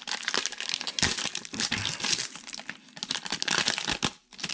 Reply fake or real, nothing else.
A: real